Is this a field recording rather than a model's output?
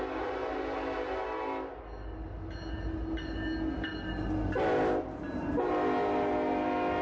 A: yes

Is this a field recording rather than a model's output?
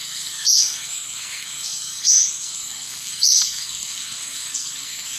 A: no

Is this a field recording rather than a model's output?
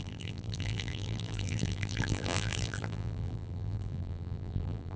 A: no